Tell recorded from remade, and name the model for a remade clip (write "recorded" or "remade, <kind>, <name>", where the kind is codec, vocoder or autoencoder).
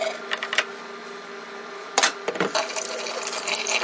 recorded